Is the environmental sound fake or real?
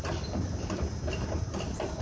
real